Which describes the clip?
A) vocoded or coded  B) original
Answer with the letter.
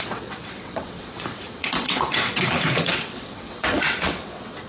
A